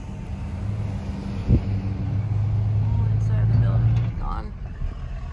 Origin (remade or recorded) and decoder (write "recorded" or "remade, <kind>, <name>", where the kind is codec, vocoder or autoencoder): recorded